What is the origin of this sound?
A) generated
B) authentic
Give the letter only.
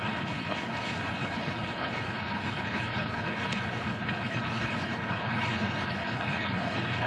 A